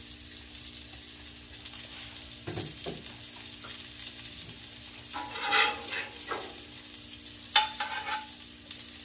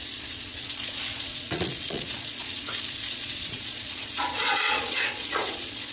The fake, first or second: second